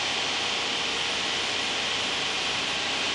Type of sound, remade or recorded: remade